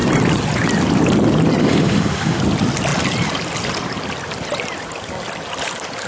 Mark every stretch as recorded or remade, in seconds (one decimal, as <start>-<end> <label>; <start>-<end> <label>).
0.0-1.6 recorded; 1.6-2.4 remade; 2.4-6.1 recorded